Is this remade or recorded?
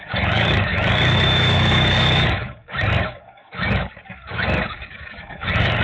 remade